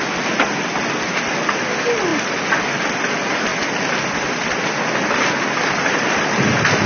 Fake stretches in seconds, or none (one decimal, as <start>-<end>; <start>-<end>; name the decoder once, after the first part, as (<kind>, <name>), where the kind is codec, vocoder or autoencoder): none